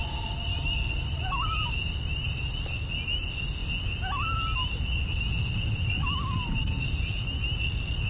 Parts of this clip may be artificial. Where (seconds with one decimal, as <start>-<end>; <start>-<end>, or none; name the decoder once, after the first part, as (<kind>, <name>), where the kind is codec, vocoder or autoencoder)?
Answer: none